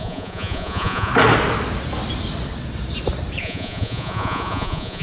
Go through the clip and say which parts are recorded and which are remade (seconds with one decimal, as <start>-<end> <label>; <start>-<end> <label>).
0.0-1.1 remade; 1.1-3.4 recorded; 3.4-5.0 remade